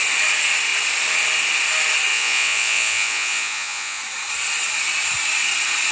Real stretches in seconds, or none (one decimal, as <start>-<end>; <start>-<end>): 0.0-2.1; 4.0-5.9